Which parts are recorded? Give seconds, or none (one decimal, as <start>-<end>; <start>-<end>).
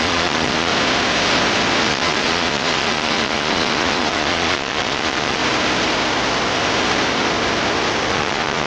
0.7-1.8; 5.4-8.1